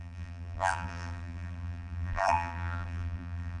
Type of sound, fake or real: fake